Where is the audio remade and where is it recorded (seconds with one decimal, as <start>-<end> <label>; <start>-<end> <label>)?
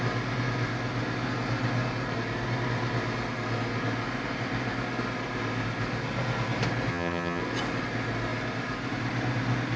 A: 0.0-6.9 recorded; 6.9-7.4 remade; 7.4-9.8 recorded